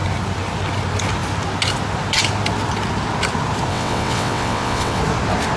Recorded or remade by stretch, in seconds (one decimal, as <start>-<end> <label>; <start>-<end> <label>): 0.0-3.7 recorded; 3.7-5.0 remade; 5.0-5.6 recorded

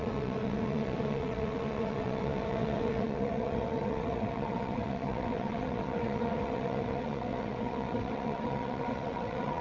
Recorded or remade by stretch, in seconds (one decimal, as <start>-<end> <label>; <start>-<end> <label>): 0.0-9.6 remade

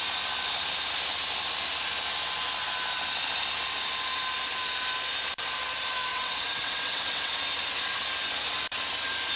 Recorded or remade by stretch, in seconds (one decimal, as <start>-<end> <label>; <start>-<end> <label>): 0.0-6.1 recorded; 6.1-7.3 remade; 7.3-9.4 recorded

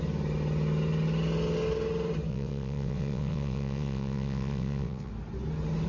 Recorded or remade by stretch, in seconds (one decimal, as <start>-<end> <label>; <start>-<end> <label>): 0.0-2.3 recorded; 2.3-5.1 remade; 5.1-5.9 recorded

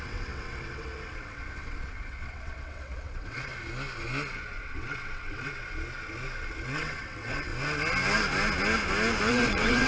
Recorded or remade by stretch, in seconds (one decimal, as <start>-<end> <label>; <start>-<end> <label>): 0.0-3.5 remade; 3.5-4.6 recorded; 4.6-5.6 remade; 5.6-6.5 recorded; 6.5-7.5 remade; 7.5-9.3 recorded; 9.3-9.9 remade

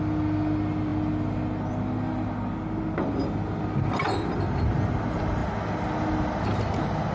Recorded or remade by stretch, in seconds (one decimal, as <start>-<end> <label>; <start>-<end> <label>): 0.0-7.1 recorded